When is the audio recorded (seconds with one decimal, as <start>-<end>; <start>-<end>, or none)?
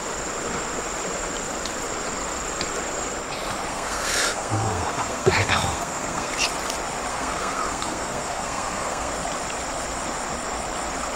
0.0-3.7; 6.3-7.1; 9.1-11.2